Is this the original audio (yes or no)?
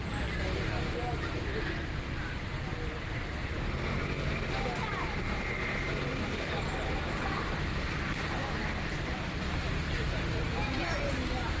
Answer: yes